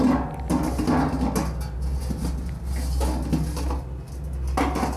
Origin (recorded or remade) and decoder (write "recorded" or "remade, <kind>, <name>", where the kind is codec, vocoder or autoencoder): recorded